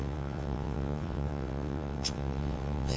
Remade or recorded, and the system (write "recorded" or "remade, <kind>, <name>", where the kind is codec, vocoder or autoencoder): remade, vocoder, WaveNeXt